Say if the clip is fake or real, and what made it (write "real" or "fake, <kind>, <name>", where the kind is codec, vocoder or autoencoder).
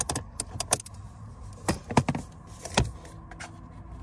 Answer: real